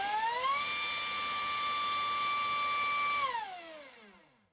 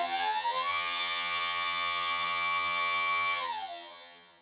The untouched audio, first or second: first